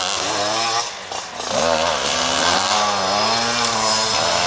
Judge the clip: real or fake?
real